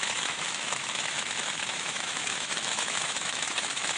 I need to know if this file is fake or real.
fake